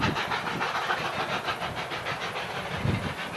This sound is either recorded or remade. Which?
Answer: recorded